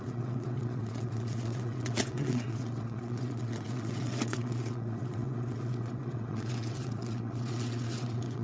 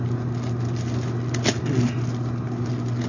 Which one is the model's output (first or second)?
first